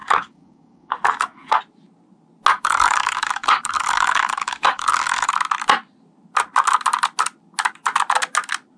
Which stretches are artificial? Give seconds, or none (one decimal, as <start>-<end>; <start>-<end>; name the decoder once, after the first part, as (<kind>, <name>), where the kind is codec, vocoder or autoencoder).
0.0-1.6 (codec, DAC); 2.5-5.3